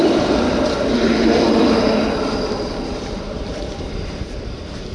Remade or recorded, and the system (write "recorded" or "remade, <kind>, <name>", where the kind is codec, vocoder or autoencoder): remade, vocoder, BigVGAN v2